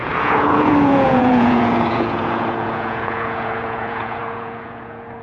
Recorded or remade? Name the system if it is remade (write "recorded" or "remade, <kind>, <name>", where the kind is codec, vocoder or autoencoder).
remade, vocoder, Vocos